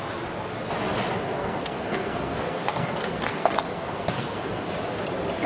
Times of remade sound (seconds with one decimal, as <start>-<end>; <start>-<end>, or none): 1.4-4.7